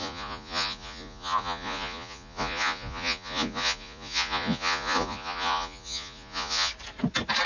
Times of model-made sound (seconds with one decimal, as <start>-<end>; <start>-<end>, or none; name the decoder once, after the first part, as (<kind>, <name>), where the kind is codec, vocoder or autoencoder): 0.0-6.7 (vocoder, Vocos)